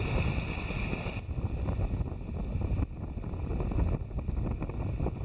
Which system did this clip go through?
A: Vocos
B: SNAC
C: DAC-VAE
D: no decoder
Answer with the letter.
D